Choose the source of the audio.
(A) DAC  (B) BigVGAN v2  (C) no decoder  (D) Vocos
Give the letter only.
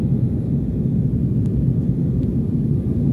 C